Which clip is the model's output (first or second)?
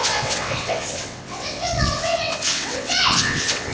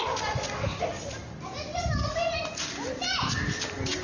first